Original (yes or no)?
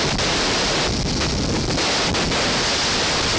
yes